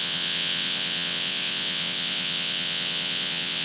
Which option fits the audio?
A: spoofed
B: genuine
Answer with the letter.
A